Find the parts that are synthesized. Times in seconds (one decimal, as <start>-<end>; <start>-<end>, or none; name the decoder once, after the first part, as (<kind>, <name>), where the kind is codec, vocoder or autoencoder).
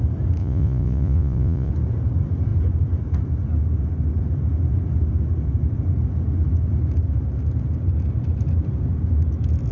0.4-1.7 (vocoder, Vocos)